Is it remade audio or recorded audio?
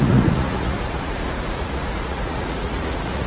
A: remade